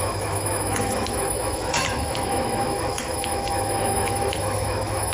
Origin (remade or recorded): remade